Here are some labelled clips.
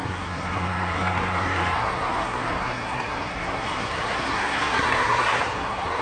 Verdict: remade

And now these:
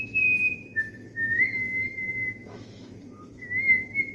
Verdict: remade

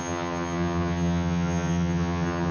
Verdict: remade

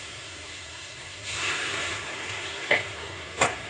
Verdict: remade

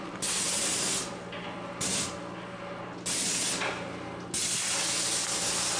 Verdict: recorded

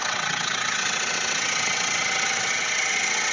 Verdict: remade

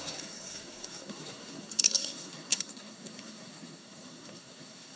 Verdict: remade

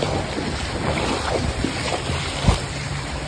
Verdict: remade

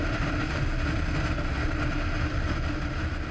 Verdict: recorded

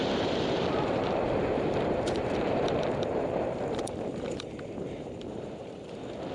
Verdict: remade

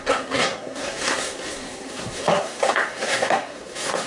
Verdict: remade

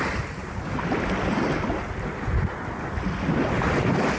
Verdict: recorded